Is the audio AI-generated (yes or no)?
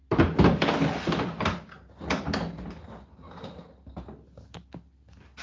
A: no